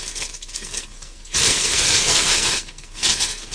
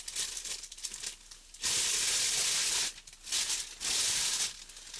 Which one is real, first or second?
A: second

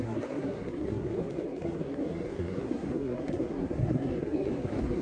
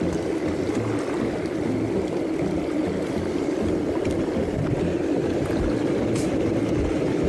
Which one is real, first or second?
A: second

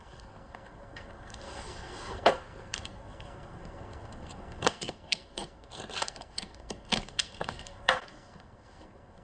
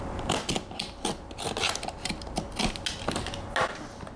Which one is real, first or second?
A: second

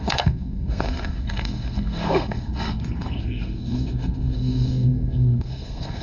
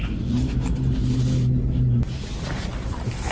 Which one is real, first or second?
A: second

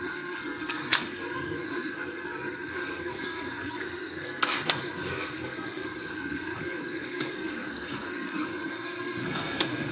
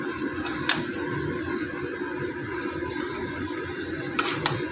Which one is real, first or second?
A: second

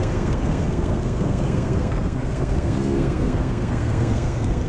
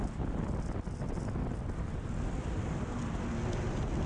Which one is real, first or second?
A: second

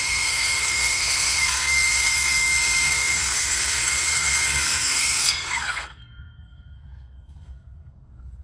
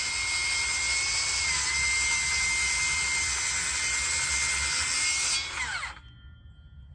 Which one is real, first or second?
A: second